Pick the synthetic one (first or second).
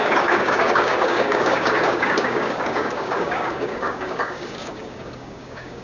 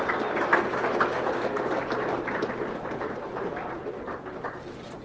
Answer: first